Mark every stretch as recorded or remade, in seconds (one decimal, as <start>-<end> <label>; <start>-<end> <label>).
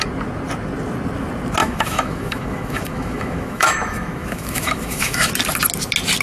0.0-1.6 recorded; 1.6-5.3 remade; 5.3-6.2 recorded